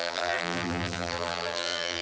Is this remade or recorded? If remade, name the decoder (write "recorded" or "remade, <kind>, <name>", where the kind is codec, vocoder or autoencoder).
remade, vocoder, BigVGAN v2